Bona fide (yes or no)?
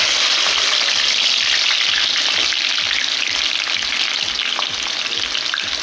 yes